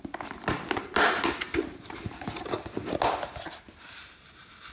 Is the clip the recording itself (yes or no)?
yes